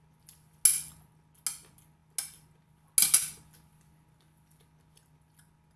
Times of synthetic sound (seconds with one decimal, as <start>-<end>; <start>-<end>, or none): none